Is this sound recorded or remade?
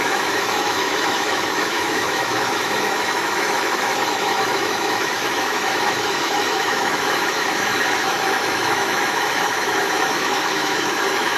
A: remade